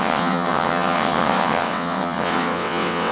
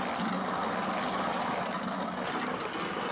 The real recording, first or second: second